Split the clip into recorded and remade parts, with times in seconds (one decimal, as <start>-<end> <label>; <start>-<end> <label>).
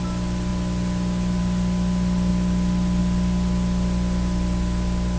0.0-5.2 recorded